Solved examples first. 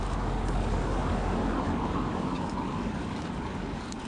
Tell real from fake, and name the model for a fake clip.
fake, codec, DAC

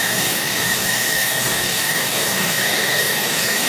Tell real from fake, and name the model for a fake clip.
fake, codec, DAC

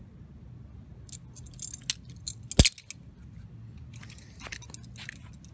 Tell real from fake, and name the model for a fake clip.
real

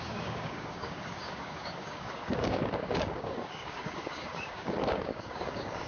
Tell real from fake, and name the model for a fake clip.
fake, codec, DAC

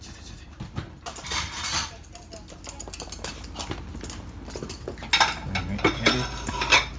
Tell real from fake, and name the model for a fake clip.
real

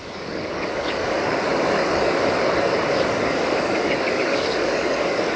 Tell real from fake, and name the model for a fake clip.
fake, codec, DAC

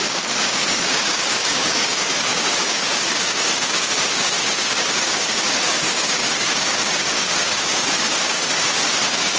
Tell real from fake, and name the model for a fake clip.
fake, codec, DAC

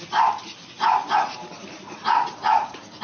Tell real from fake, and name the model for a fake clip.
real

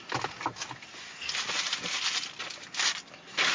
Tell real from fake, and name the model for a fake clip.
real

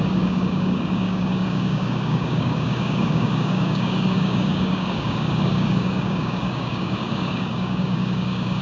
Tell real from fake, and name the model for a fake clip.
fake, codec, DAC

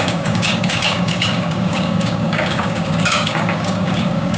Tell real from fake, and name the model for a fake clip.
fake, codec, DAC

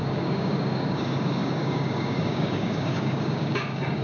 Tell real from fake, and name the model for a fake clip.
fake, codec, DAC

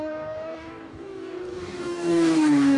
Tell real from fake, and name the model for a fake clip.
fake, codec, DAC